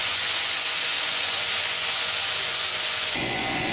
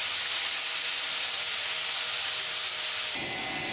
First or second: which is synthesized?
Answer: first